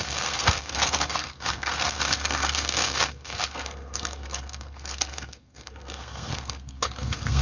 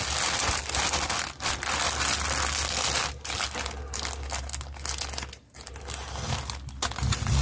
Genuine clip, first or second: second